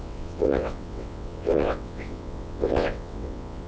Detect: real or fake fake